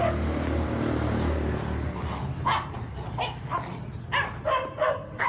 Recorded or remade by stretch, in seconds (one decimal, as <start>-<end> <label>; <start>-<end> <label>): 0.0-5.3 recorded

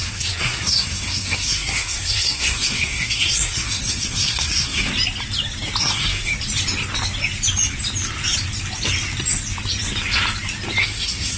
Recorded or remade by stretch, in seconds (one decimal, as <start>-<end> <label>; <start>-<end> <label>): 0.0-4.9 remade; 4.9-5.8 recorded; 5.8-6.3 remade; 6.3-10.8 recorded; 10.8-11.4 remade

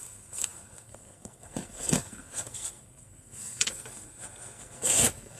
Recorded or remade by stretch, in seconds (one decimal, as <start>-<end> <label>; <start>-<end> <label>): 0.0-5.4 remade

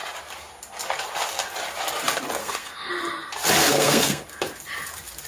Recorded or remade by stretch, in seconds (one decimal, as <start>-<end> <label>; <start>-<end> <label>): 0.0-2.4 recorded; 2.4-2.9 remade; 2.9-3.6 recorded; 3.6-4.2 remade; 4.2-5.3 recorded

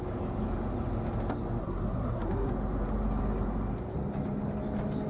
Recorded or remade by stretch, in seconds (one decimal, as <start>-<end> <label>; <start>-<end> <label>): 0.0-1.6 recorded; 1.6-2.5 remade; 2.5-5.1 recorded

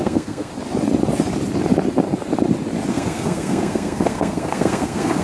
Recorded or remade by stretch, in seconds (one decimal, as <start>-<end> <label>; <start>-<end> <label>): 0.0-0.5 remade; 0.5-2.9 recorded; 2.9-5.2 remade

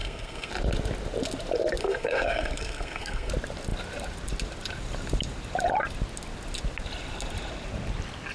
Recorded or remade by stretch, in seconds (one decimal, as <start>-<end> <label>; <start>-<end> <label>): 0.0-0.5 remade; 0.5-1.8 recorded; 1.8-3.3 remade; 3.3-8.3 recorded

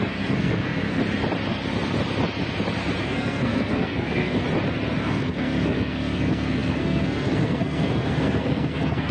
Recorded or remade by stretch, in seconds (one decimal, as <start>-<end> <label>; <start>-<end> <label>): 0.0-1.0 remade; 1.0-3.0 recorded; 3.0-4.4 remade; 4.4-5.0 recorded; 5.0-9.1 remade